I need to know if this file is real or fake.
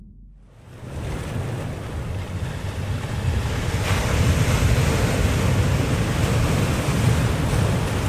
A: real